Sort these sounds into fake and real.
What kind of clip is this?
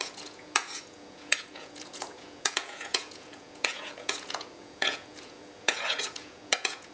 fake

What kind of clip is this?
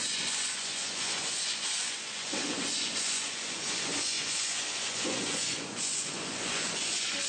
fake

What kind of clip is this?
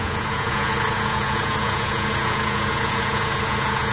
fake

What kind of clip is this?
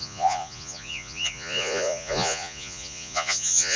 fake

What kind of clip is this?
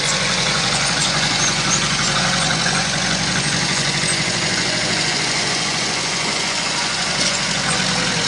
fake